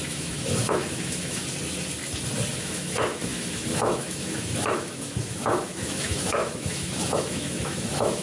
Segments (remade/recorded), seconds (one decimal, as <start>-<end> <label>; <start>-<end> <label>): 0.0-1.4 remade; 1.4-2.5 recorded; 2.5-8.2 remade